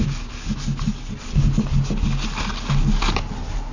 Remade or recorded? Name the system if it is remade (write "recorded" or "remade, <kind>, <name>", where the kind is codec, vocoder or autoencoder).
recorded